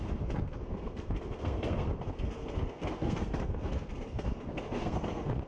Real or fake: fake